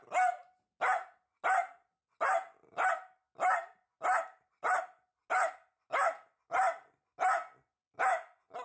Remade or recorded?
recorded